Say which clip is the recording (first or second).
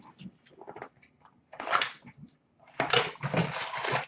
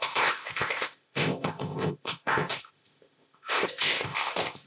first